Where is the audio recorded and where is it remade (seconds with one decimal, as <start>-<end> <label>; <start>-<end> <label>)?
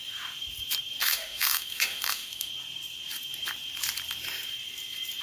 0.0-1.0 recorded; 1.0-2.5 remade; 2.5-5.2 recorded